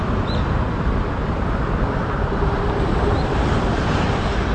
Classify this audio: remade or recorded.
recorded